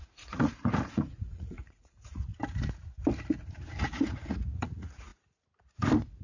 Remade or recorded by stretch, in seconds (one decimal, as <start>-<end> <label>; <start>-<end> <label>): 0.0-2.3 remade; 2.3-3.8 recorded; 3.8-5.1 remade; 5.1-6.2 recorded

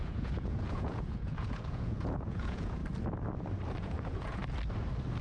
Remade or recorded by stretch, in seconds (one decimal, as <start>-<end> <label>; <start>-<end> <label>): 0.0-2.8 remade; 2.8-3.8 recorded; 3.8-4.4 remade; 4.4-5.2 recorded